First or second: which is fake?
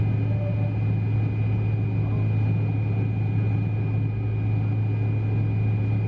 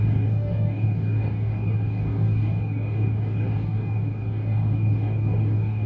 second